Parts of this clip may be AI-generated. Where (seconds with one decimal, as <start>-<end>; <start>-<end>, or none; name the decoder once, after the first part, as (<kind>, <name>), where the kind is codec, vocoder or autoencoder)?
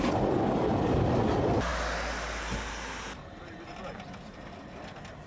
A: none